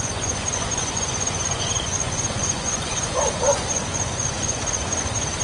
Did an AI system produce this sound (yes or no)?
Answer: yes